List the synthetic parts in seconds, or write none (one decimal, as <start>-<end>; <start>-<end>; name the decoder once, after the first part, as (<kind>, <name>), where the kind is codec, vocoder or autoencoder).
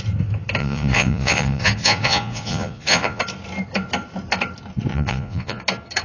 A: 0.6-3.2 (vocoder, Vocos); 4.9-5.6